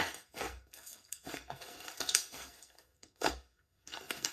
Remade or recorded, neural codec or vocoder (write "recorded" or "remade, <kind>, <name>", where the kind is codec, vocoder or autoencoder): remade, codec, SNAC